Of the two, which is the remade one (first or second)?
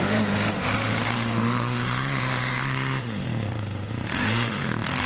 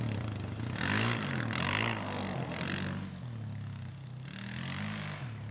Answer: first